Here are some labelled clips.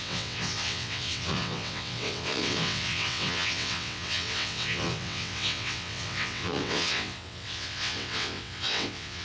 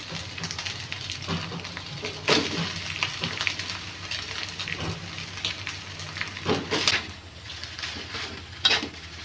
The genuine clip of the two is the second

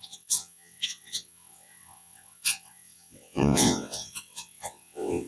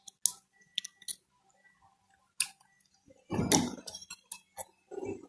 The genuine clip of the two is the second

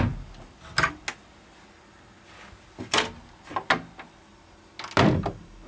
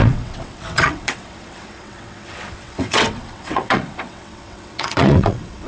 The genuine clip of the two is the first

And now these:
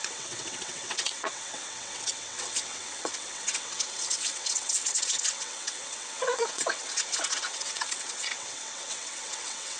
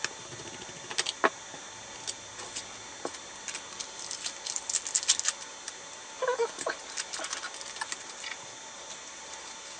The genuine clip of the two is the second